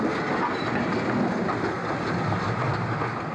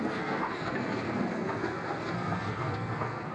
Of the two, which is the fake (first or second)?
second